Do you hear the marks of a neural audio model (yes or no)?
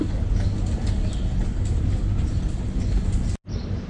no